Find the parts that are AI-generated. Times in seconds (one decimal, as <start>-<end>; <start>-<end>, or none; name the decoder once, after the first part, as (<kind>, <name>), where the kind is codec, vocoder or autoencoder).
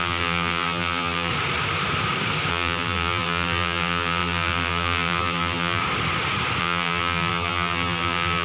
0.0-1.3 (vocoder, BigVGAN v2); 2.5-5.8; 6.6-8.4